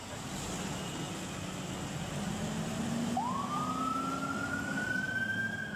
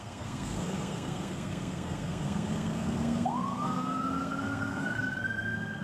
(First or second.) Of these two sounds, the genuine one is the first